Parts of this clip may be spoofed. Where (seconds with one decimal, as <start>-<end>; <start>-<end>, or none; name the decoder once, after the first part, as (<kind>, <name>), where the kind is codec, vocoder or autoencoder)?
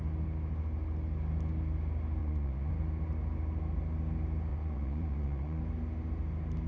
2.2-2.7 (vocoder, Vocos); 4.5-5.6